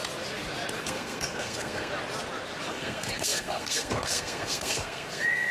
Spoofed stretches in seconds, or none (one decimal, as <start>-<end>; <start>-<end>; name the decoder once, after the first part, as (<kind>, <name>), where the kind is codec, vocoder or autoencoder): 0.8-1.9 (codec, SNAC); 2.7-5.5